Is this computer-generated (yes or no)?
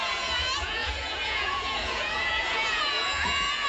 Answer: yes